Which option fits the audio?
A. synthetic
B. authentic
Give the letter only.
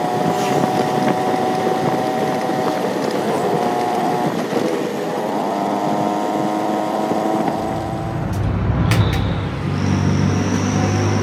B